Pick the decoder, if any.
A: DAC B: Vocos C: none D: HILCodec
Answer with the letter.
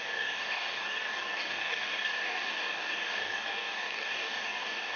A